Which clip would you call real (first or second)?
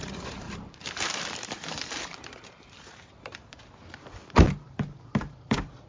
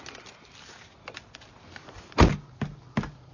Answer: second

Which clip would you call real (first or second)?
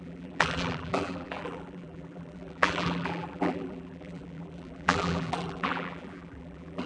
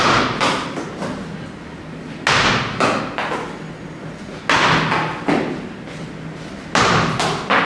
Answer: second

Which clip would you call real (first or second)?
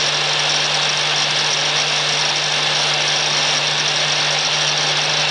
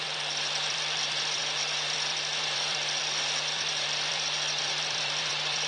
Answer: first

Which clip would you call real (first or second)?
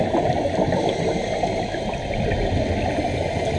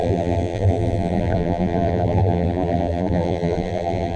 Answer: first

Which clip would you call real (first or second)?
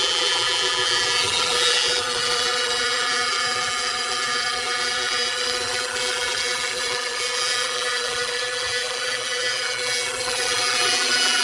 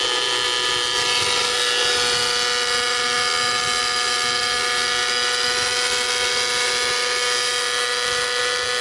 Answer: second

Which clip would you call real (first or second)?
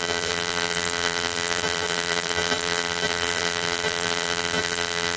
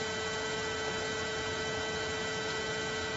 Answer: second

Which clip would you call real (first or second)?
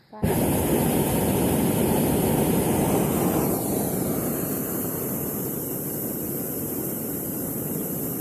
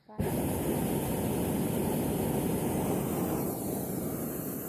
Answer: second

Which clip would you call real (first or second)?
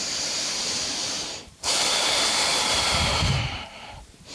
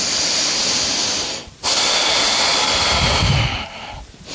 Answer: second